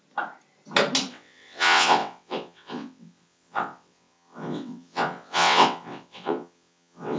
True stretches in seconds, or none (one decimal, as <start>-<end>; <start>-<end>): 0.0-1.1